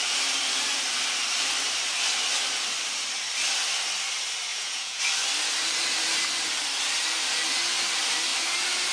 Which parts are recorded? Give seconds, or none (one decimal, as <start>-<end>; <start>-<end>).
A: 0.0-4.5; 5.0-8.9